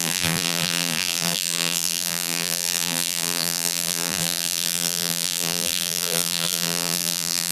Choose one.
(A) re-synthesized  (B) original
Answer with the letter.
A